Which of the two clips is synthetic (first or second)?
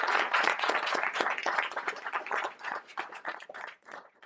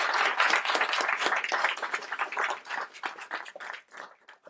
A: first